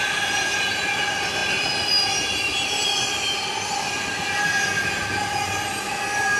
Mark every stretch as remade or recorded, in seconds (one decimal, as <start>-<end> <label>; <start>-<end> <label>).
0.0-6.4 recorded